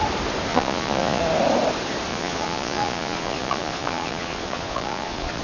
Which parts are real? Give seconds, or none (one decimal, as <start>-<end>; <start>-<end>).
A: 0.0-0.5; 1.2-2.1